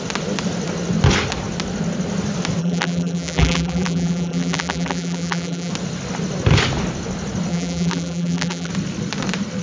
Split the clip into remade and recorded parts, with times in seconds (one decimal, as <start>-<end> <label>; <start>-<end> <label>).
0.0-2.6 recorded; 2.6-5.7 remade; 5.7-7.5 recorded; 7.5-8.7 remade; 8.7-9.6 recorded

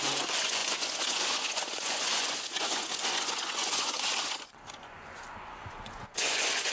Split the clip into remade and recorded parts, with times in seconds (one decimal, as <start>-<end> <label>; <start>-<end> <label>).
0.0-6.7 remade